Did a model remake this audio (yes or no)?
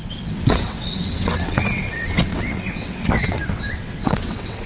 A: yes